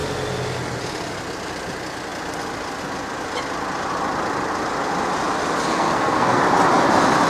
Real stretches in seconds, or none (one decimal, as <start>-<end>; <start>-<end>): 0.0-5.7; 6.4-7.3